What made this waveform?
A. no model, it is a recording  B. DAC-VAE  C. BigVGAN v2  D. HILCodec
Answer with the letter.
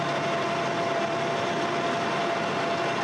A